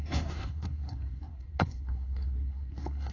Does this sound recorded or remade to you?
remade